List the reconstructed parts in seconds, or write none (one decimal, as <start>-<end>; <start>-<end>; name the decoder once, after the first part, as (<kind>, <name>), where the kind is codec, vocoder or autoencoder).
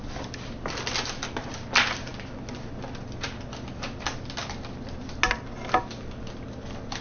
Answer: none